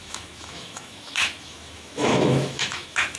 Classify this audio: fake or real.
fake